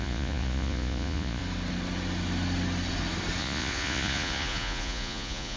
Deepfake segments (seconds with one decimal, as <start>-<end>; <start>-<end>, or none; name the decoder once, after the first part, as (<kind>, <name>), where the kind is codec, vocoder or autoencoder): 0.0-1.4 (vocoder, Vocos); 3.4-5.6